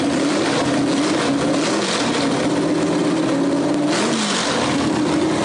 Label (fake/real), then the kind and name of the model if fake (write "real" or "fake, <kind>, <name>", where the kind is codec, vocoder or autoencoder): real